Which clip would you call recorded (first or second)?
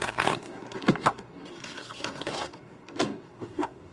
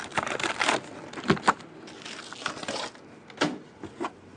second